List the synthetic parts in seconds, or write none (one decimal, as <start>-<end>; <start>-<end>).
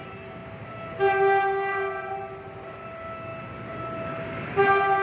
none